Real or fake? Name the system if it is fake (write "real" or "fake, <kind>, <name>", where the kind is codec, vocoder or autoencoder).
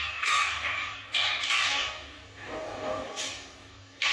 fake, codec, DAC